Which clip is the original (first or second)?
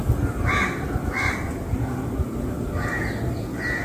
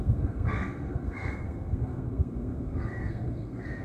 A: first